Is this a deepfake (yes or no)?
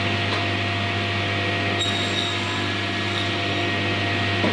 no